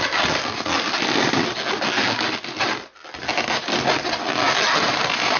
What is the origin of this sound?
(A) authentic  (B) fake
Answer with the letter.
A